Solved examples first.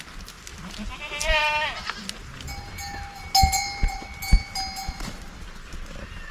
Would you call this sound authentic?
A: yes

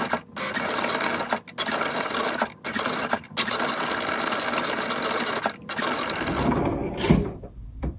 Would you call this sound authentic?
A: yes